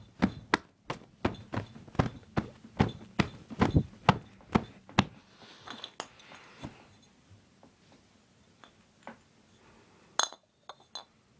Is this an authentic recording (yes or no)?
yes